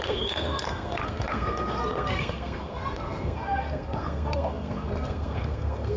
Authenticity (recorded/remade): remade